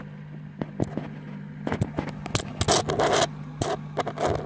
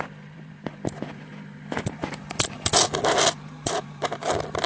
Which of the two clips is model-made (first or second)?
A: second